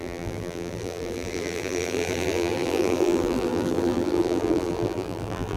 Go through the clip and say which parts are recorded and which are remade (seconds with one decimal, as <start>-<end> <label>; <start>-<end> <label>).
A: 0.0-5.6 remade